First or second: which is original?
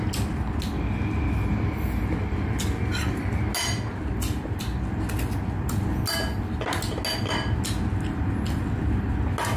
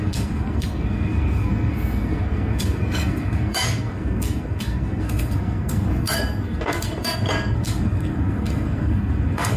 first